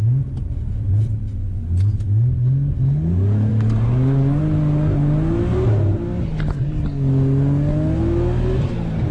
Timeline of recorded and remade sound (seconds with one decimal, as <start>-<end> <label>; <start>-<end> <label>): 0.0-3.5 recorded; 3.5-4.4 remade; 4.4-9.1 recorded

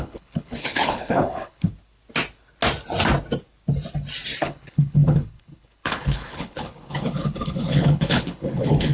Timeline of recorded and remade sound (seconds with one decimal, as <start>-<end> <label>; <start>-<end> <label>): 0.0-1.7 remade; 1.7-4.4 recorded; 4.4-8.9 remade